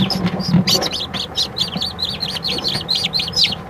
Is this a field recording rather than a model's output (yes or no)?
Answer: yes